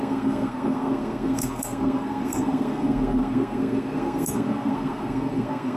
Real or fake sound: fake